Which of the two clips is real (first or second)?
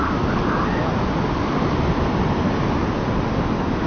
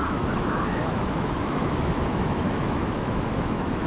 first